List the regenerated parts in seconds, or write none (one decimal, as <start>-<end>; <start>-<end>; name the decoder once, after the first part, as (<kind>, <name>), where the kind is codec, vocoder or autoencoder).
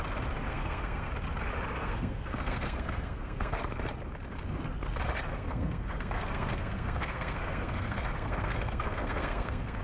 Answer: 0.5-1.1 (codec, SNAC); 1.8-3.6; 5.3-9.8